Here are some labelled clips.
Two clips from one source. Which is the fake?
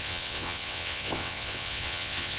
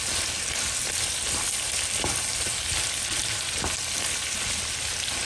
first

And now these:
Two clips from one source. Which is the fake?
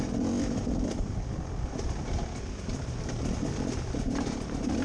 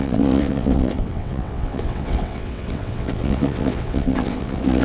second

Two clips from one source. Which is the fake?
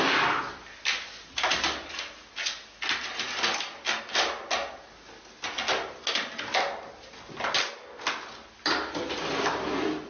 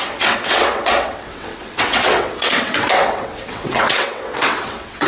second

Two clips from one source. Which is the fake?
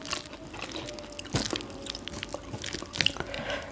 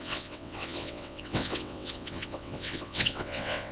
second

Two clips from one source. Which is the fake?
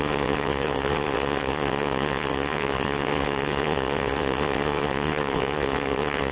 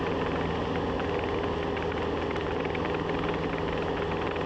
first